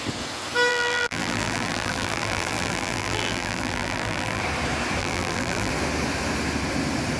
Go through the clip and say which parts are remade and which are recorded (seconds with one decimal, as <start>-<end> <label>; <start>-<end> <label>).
0.0-0.7 recorded; 0.7-4.4 remade; 4.4-5.0 recorded; 5.0-5.7 remade; 5.7-7.2 recorded